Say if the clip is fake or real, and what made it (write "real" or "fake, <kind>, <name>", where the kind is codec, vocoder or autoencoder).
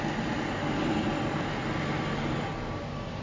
real